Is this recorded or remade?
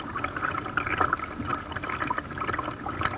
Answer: recorded